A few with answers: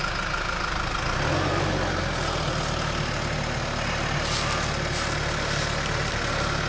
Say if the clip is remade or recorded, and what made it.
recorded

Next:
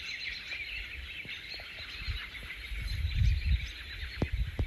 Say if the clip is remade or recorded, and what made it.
recorded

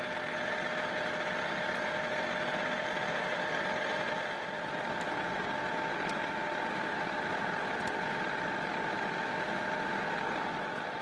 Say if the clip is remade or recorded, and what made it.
recorded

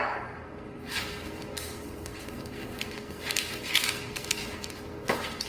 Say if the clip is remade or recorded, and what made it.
remade, codec, SNAC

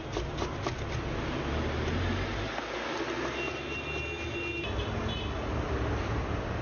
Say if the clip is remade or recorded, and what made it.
recorded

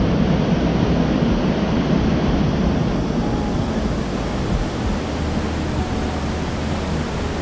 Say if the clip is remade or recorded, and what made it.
recorded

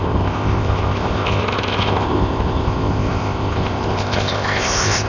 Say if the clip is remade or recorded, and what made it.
remade, codec, ZipCodec